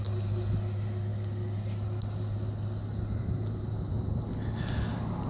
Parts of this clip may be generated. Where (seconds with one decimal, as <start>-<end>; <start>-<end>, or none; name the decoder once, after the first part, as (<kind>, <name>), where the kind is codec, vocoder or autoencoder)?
none